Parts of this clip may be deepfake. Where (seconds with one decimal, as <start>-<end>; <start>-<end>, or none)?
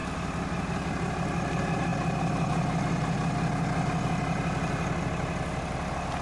none